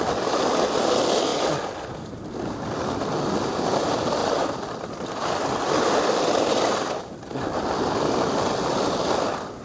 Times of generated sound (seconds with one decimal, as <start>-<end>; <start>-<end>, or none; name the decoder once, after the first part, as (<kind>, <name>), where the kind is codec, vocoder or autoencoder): none